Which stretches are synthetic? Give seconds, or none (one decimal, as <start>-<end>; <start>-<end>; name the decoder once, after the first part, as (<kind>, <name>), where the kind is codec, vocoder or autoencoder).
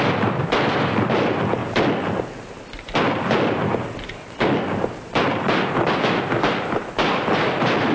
none